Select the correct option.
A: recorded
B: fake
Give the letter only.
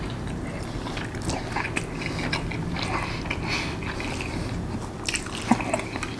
A